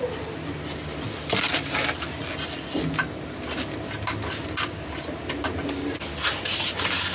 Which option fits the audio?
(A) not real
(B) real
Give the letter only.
B